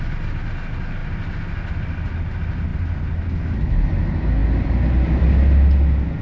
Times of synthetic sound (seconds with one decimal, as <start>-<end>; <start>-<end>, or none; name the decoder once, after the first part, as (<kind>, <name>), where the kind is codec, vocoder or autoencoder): none